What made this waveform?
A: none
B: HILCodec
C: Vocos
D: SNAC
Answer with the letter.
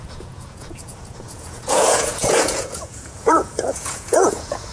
C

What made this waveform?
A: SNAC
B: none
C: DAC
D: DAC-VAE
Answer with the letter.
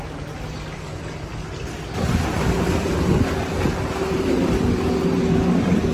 B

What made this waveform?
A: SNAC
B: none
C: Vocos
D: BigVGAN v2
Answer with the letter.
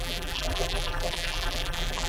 D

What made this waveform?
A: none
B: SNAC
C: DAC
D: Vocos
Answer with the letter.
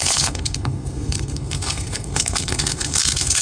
B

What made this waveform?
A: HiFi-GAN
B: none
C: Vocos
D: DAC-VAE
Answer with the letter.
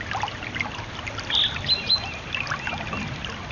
B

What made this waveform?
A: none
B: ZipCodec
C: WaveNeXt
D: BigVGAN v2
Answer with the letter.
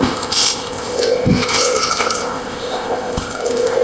B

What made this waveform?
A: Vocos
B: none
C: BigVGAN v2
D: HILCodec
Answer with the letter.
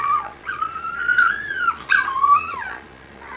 A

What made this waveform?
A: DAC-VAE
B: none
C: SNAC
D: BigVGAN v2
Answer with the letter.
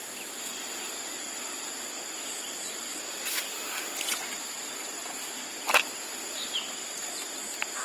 B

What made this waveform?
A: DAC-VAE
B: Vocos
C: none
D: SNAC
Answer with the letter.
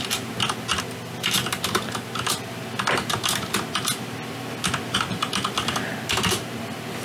C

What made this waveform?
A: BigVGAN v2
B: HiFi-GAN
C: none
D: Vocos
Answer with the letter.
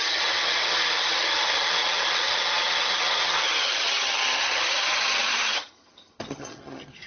B